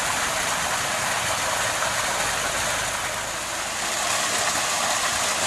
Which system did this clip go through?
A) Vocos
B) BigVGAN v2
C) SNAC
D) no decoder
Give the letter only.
D